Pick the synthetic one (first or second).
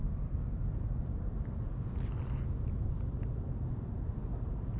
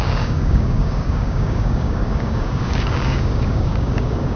second